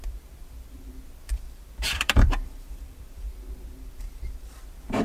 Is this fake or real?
fake